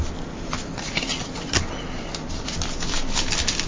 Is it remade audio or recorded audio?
recorded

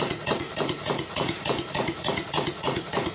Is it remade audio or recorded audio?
remade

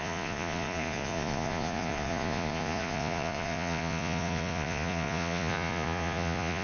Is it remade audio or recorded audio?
remade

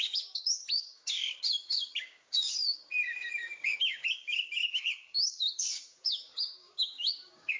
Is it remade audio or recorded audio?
remade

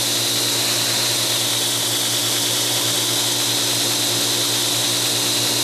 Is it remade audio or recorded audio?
recorded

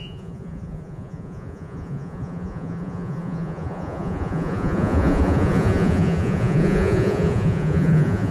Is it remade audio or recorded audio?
remade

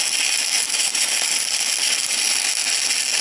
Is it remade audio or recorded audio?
recorded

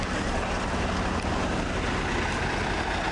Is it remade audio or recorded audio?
recorded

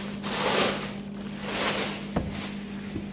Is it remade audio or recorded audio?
recorded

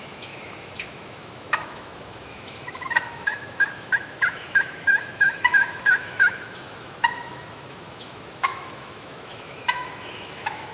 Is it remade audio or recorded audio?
remade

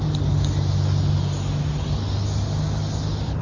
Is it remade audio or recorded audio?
recorded